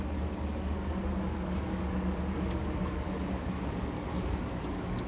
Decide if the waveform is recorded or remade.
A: remade